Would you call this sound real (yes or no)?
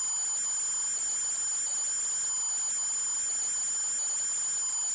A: yes